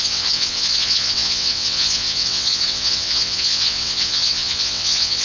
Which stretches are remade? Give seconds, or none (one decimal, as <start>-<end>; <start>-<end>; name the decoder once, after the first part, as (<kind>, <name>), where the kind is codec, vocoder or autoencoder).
0.0-5.2 (vocoder, WaveNeXt)

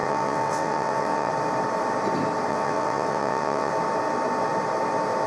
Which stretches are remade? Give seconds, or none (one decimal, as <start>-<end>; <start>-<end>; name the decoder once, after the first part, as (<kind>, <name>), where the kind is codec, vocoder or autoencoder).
0.0-1.3 (vocoder, WaveNeXt); 2.5-3.7

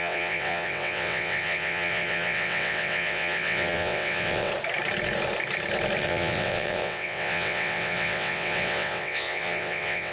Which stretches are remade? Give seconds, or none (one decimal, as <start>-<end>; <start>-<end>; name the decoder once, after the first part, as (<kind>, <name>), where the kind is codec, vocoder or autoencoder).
0.0-4.5 (vocoder, WaveNeXt); 6.0-10.1

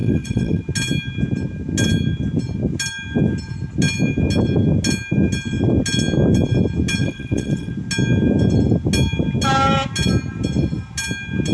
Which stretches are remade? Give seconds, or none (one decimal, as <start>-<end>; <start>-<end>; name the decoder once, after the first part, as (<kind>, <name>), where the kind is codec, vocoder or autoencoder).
0.0-0.6 (vocoder, WaveNeXt); 7.0-7.7

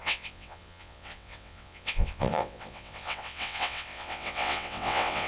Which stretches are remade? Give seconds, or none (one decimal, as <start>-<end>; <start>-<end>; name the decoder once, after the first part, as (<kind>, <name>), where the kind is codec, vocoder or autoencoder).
0.0-5.3 (vocoder, WaveNeXt)

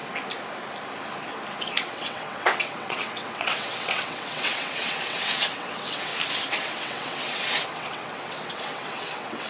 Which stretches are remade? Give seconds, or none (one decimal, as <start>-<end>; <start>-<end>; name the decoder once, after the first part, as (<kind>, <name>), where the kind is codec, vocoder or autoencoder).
1.6-6.1 (vocoder, WaveNeXt); 6.6-9.5

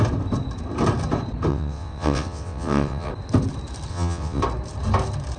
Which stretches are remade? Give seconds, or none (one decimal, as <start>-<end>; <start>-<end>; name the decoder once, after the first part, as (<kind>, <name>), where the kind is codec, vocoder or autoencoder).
1.5-3.1 (vocoder, WaveNeXt); 3.9-4.4

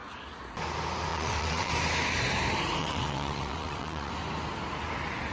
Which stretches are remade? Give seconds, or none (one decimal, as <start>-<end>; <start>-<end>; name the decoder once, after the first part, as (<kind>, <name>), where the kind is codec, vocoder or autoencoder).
1.1-1.7 (vocoder, WaveNeXt); 2.8-4.1